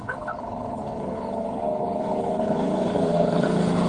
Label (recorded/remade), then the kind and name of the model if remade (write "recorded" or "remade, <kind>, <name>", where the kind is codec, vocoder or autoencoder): remade, codec, HILCodec